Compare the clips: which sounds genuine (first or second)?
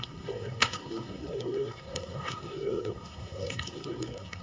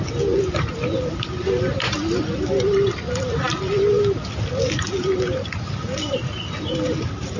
second